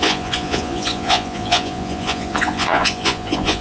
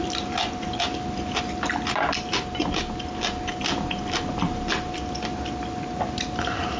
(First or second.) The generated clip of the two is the first